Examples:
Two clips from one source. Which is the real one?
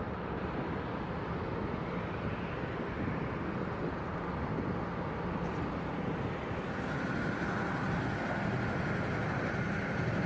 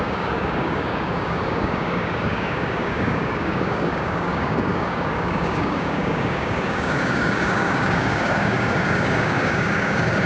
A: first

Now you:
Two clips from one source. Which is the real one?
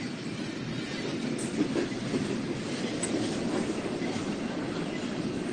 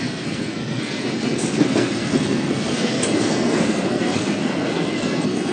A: first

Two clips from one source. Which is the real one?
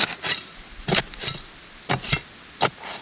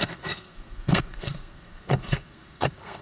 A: first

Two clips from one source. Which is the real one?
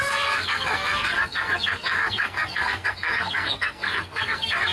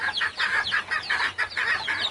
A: second